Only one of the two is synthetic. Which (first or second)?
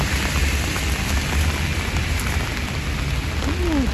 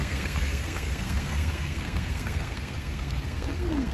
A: second